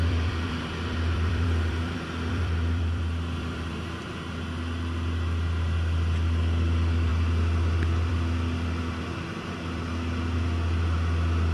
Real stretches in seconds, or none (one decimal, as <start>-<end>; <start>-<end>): 4.0-11.5